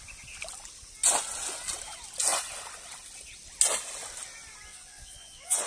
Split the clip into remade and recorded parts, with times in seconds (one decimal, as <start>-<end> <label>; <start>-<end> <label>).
0.0-4.7 recorded; 4.7-5.7 remade